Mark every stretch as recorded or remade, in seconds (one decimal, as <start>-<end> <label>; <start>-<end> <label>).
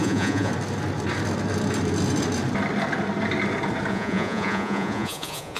0.0-0.5 remade; 0.5-3.9 recorded; 3.9-5.6 remade